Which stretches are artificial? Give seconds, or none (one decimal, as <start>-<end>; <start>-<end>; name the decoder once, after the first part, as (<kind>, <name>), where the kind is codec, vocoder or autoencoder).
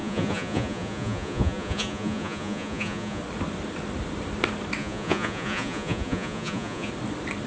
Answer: 0.0-3.2 (vocoder, Vocos); 4.8-6.9